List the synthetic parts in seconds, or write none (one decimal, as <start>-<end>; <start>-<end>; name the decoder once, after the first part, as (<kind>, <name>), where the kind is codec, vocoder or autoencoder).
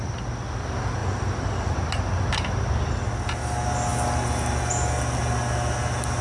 none